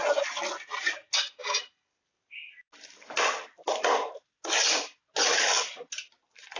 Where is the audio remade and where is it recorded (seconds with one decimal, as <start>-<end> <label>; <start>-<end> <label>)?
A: 0.0-6.6 recorded